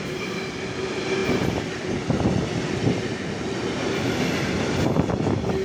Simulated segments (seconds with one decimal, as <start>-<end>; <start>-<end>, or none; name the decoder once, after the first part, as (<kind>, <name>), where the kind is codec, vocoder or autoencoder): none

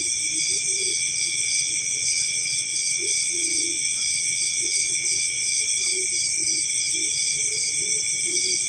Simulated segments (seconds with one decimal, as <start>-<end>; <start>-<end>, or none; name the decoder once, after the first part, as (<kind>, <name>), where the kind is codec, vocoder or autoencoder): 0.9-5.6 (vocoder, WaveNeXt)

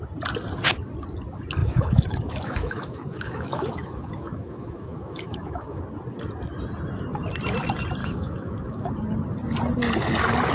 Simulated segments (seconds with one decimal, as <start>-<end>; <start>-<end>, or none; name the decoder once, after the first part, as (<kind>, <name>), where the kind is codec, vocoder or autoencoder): 1.6-5.8 (autoencoder, DAC-VAE); 8.0-8.9

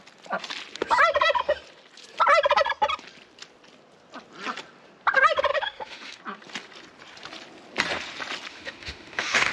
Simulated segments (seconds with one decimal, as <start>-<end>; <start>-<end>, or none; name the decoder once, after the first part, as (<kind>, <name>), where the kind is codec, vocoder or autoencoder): 5.5-6.2 (autoencoder, DAC-VAE); 8.5-9.5

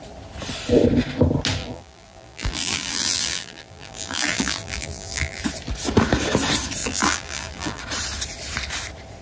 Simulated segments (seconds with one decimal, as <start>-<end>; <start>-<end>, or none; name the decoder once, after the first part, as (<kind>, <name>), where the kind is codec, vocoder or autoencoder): 1.6-5.4 (vocoder, BigVGAN v2); 6.8-7.8

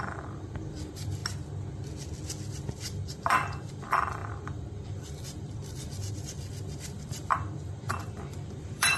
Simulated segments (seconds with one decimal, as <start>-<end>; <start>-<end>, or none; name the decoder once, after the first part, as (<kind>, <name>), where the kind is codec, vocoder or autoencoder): 0.0-1.2 (vocoder, BigVGAN v2); 2.5-9.0